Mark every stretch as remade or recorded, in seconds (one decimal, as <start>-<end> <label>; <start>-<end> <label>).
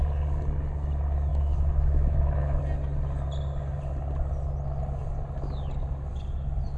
0.0-1.3 recorded; 1.3-2.6 remade; 2.6-6.8 recorded